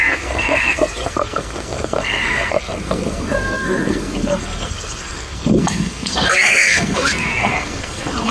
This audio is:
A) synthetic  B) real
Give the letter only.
A